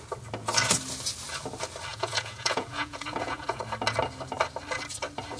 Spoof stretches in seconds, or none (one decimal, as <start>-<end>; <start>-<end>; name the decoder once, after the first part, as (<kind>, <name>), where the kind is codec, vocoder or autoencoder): 1.9-3.6 (vocoder, Vocos)